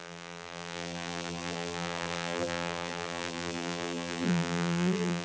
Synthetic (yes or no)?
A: yes